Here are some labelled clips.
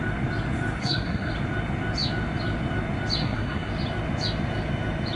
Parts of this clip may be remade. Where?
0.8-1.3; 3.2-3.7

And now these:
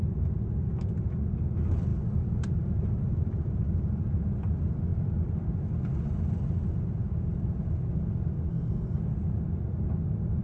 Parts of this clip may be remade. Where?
8.5-9.0

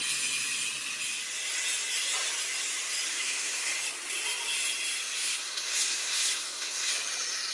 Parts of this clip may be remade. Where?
3.1-3.7; 5.2-6.9